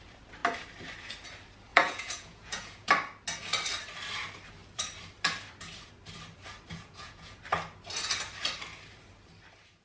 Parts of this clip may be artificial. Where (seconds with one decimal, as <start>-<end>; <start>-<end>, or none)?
1.7-2.9; 6.7-7.4